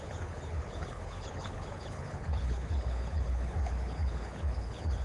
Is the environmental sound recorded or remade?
remade